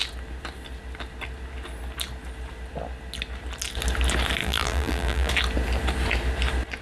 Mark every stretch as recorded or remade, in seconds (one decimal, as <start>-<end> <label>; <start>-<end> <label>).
0.0-4.4 recorded; 4.4-5.3 remade; 5.3-6.8 recorded